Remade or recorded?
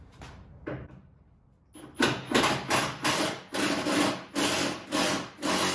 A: recorded